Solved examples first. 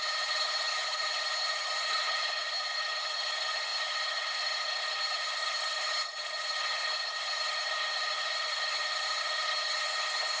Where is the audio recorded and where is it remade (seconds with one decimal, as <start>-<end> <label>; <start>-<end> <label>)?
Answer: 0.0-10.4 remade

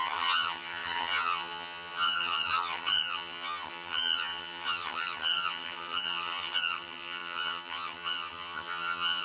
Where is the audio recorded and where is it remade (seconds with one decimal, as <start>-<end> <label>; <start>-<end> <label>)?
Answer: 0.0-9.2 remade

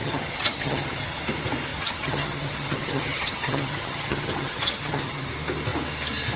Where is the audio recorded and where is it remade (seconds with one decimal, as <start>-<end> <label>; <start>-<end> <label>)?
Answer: 0.0-1.2 remade; 1.2-1.7 recorded; 1.7-5.3 remade; 5.3-6.4 recorded